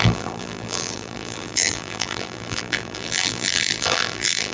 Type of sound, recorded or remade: remade